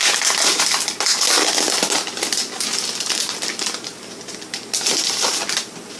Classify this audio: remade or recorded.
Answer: recorded